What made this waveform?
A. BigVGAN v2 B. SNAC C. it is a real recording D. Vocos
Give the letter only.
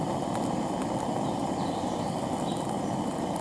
C